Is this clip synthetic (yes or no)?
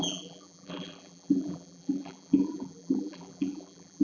yes